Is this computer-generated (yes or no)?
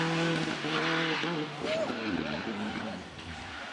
no